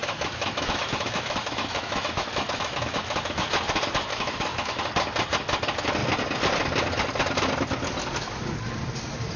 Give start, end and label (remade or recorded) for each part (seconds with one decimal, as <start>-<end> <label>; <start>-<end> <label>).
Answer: 0.0-3.5 remade; 3.5-4.1 recorded; 4.1-4.9 remade; 4.9-9.4 recorded